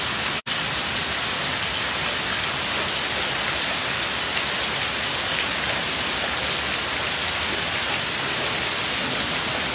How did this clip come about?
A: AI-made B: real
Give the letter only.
B